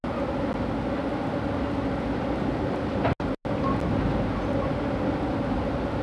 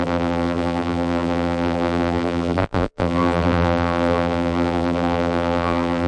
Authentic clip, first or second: first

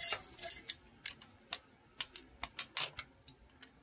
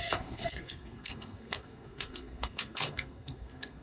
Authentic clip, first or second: first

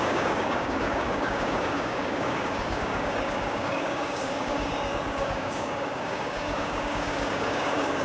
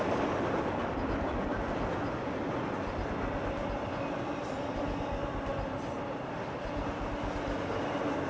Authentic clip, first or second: second